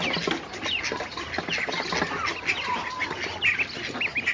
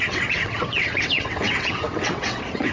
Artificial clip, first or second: second